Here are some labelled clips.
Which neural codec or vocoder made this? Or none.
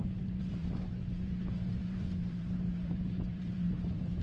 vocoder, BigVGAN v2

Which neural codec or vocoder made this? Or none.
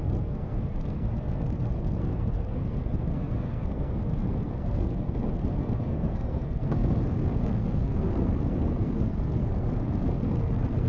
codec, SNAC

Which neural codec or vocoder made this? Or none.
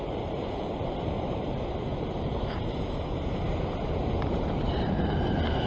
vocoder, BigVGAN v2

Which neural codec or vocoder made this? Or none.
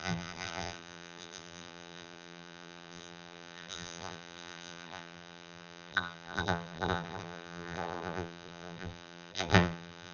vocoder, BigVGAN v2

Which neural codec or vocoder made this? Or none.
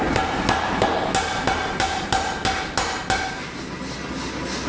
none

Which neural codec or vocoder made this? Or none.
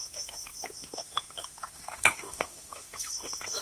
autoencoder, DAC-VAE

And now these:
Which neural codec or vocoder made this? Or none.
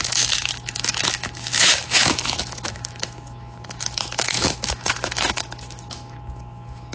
autoencoder, DAC-VAE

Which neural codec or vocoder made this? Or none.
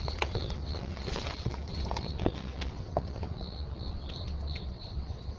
vocoder, WaveNeXt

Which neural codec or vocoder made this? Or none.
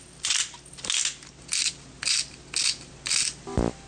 none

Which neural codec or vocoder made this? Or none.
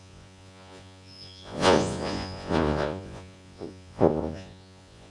vocoder, Vocos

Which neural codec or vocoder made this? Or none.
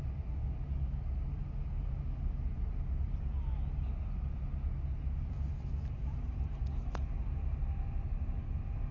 none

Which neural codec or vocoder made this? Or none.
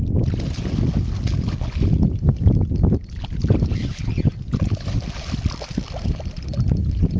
none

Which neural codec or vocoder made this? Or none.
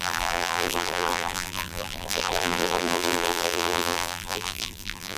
vocoder, BigVGAN v2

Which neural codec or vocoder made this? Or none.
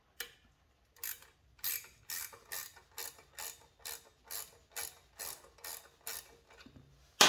none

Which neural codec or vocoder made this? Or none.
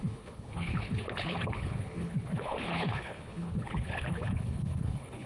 codec, HILCodec